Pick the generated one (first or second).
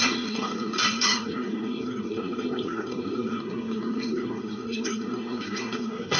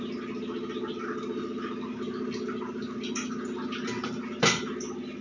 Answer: first